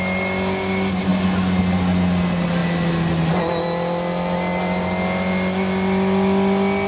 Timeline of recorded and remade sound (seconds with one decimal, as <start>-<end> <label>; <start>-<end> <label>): 0.0-6.9 recorded